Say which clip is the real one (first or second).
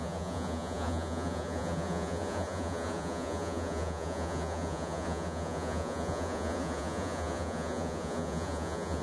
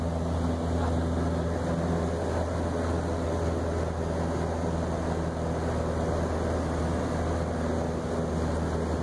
second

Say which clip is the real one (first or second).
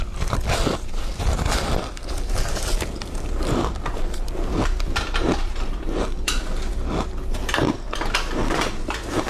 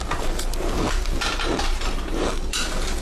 second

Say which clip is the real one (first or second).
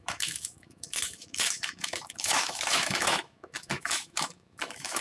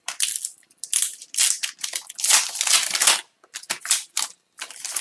second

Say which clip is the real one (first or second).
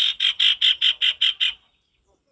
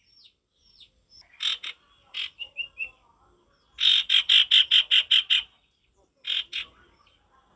second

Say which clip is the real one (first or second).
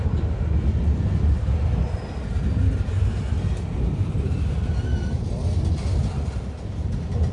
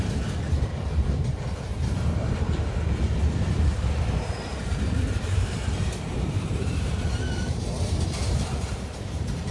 first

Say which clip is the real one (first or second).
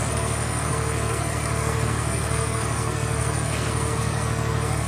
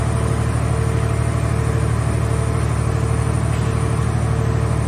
second